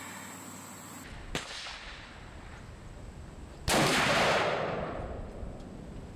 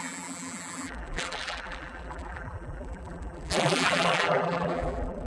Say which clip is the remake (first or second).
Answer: second